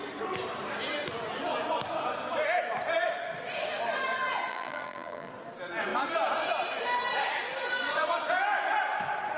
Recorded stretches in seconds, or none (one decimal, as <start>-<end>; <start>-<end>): 0.0-4.5; 5.3-9.4